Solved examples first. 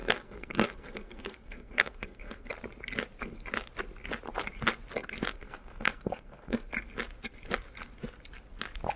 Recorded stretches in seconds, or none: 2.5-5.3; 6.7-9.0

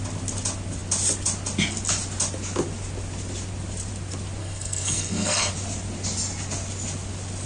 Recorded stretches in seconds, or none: 0.0-4.4; 5.5-7.5

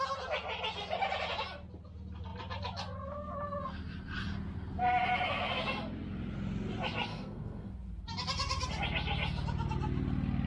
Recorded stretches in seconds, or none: 0.0-7.1; 7.7-10.5

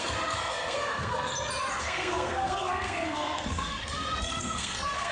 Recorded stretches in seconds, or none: 1.3-1.8

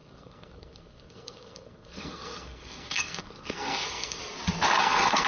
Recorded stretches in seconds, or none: 4.2-4.8

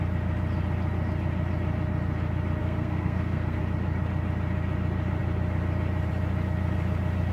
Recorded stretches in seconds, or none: 0.0-2.6; 3.6-7.3